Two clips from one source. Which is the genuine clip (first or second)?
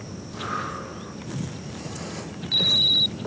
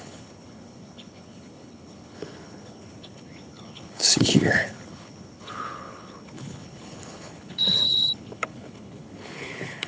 first